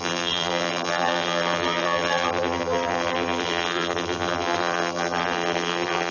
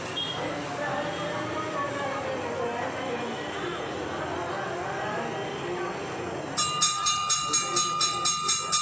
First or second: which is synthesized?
first